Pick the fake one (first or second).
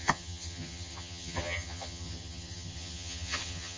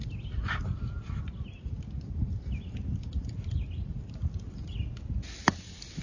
first